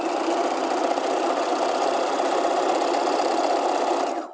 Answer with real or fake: real